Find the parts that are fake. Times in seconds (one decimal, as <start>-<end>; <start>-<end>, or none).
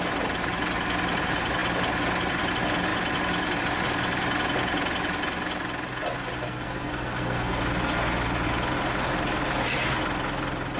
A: 6.4-7.6